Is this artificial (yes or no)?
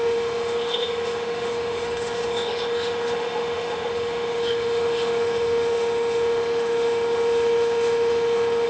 yes